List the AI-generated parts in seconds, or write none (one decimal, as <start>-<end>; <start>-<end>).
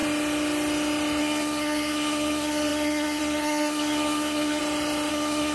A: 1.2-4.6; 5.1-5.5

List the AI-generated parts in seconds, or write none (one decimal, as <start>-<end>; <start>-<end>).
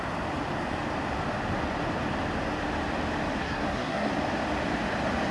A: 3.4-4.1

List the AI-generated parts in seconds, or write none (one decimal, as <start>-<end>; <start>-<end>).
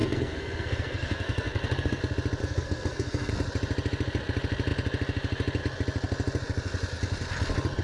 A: 0.0-2.0; 2.4-3.3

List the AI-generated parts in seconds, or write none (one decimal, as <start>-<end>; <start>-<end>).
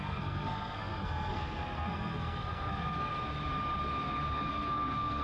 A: 0.0-3.1; 4.5-5.2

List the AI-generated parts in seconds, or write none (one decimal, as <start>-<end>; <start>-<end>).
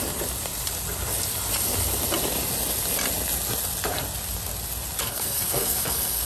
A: 5.0-6.3